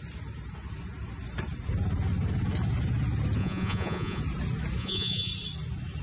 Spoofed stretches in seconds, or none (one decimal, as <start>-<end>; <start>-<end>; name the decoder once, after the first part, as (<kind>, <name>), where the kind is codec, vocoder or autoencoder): 3.4-4.2 (vocoder, Vocos); 4.8-5.3